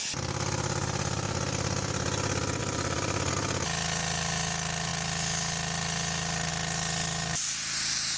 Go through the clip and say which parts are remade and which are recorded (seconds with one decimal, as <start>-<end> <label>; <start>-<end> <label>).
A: 0.0-2.6 recorded; 2.6-3.3 remade; 3.3-8.2 recorded

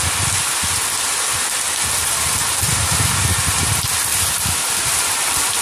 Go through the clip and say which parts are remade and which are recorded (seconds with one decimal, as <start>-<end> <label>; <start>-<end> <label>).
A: 0.0-4.1 recorded; 4.1-5.6 remade

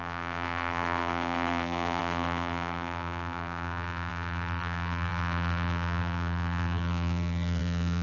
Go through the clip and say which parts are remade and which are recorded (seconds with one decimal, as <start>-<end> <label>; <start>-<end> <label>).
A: 0.0-8.0 remade

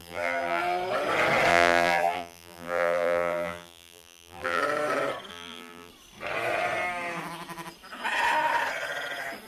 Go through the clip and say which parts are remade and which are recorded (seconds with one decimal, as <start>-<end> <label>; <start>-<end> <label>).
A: 0.0-0.6 remade; 0.6-1.5 recorded; 1.5-4.6 remade; 4.6-5.3 recorded; 5.3-5.9 remade; 5.9-9.5 recorded

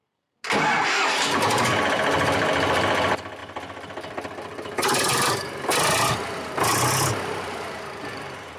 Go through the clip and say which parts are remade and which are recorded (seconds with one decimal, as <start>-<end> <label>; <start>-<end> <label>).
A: 0.0-3.4 recorded; 3.4-8.6 remade

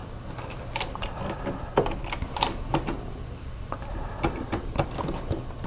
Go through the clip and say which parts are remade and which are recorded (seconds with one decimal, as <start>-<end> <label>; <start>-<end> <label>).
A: 0.0-3.4 recorded; 3.4-5.7 remade

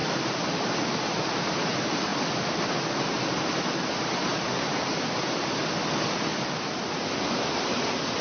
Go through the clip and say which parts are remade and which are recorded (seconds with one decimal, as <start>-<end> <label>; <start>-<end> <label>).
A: 0.0-1.0 remade; 1.0-4.3 recorded; 4.3-5.6 remade; 5.6-6.3 recorded; 6.3-6.9 remade; 6.9-8.2 recorded